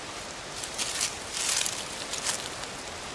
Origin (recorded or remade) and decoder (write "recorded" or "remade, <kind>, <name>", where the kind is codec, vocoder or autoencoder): recorded